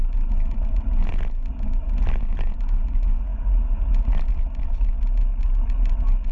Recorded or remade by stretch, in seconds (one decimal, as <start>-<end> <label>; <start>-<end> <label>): 0.0-6.3 recorded